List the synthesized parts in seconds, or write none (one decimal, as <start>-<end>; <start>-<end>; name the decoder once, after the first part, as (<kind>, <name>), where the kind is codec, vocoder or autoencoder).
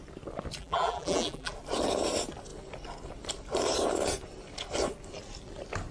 0.6-1.5 (vocoder, BigVGAN v2)